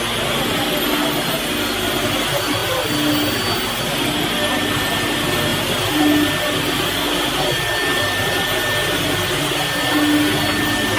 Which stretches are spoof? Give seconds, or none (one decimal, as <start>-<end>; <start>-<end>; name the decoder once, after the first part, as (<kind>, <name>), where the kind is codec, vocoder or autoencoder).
5.5-6.0 (vocoder, BigVGAN v2)